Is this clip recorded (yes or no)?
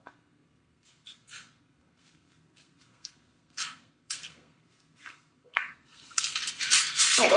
no